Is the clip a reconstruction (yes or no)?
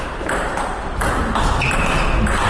no